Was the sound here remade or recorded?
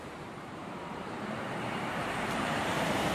remade